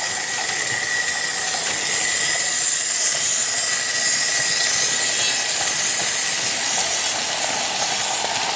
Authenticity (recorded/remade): recorded